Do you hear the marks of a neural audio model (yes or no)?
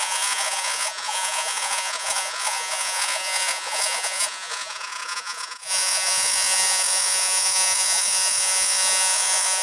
yes